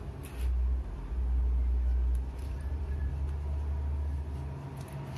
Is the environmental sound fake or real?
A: real